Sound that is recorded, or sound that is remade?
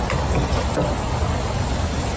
recorded